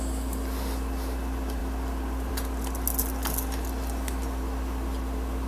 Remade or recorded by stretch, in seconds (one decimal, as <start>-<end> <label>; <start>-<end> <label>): 0.0-5.5 recorded